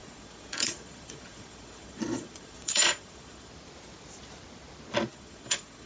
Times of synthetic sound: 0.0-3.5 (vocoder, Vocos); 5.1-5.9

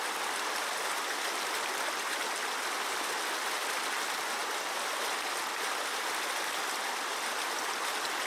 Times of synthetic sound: none

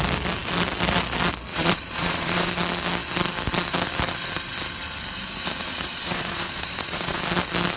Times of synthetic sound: 1.5-2.5 (vocoder, Vocos); 5.7-7.2